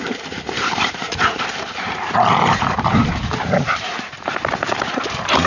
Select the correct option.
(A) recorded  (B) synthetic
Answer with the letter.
B